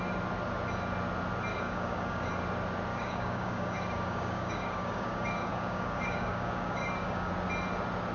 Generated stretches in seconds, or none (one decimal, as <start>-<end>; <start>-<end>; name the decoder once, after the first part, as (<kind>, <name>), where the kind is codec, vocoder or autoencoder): 1.5-2.3 (codec, DAC); 2.9-7.3